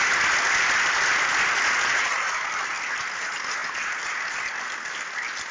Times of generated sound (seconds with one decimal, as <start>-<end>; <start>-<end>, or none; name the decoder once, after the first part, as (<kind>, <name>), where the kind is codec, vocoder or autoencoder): none